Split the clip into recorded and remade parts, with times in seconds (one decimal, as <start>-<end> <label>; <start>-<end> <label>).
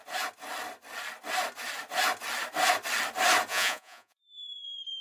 0.0-3.5 recorded; 3.5-4.2 remade; 4.2-5.0 recorded